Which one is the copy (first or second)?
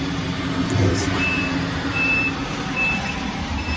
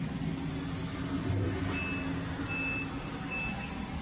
first